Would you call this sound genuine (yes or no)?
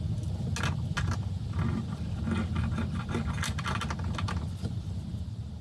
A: yes